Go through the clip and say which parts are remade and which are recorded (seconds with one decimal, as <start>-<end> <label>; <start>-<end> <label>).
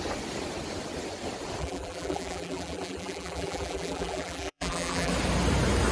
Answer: 0.0-1.6 recorded; 1.6-5.1 remade; 5.1-5.9 recorded